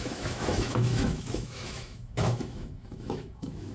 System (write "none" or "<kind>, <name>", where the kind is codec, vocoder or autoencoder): autoencoder, DAC-VAE